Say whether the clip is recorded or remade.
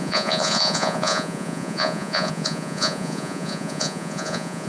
remade